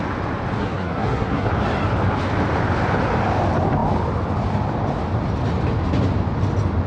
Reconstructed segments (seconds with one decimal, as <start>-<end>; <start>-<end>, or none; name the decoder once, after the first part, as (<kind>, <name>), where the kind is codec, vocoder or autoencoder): 0.6-1.5 (codec, SNAC)